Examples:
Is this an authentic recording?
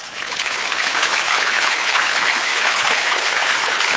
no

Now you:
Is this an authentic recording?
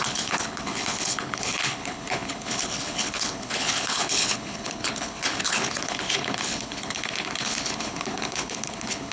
no